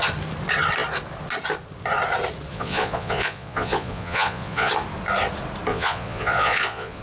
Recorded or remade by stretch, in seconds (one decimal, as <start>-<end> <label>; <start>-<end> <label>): 0.0-2.5 recorded; 2.5-4.7 remade; 4.7-5.7 recorded; 5.7-7.0 remade